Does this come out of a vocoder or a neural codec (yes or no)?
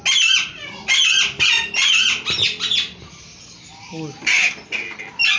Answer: no